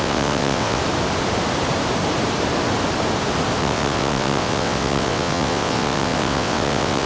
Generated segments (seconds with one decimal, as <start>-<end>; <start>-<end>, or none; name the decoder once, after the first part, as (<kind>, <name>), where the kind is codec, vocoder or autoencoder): 0.0-0.8 (vocoder, WaveNeXt); 3.6-7.1